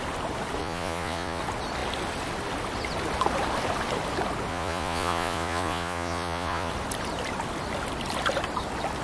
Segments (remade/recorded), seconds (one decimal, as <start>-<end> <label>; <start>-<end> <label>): 0.0-0.6 recorded; 0.6-1.4 remade; 1.4-4.5 recorded; 4.5-6.7 remade; 6.7-9.0 recorded